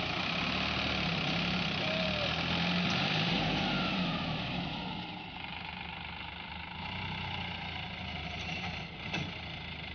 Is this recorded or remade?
remade